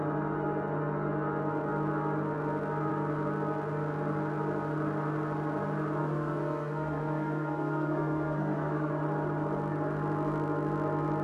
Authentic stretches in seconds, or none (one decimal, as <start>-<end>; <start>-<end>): 0.0-6.0; 8.9-11.2